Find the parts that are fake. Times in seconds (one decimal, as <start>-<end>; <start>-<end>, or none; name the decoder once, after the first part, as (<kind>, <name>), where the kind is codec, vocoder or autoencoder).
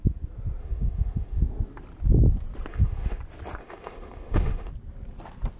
0.6-1.4 (autoencoder, DAC-VAE); 2.7-3.2; 3.6-4.7